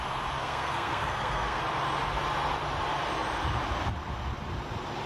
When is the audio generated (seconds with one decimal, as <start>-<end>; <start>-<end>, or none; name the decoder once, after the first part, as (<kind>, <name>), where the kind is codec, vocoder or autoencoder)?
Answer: 0.4-1.6 (codec, SNAC)